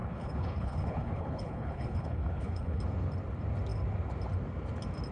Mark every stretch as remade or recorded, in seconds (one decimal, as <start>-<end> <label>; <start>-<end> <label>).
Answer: 0.0-2.8 remade; 2.8-5.1 recorded